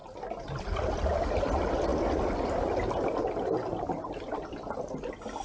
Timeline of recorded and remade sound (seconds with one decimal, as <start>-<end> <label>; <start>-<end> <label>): 0.0-5.4 recorded